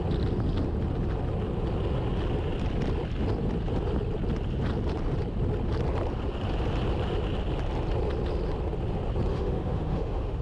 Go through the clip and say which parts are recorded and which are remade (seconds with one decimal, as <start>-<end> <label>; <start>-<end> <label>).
0.0-9.3 recorded; 9.3-10.4 remade

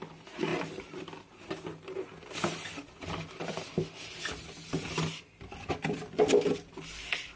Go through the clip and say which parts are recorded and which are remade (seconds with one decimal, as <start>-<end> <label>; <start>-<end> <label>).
0.0-7.4 recorded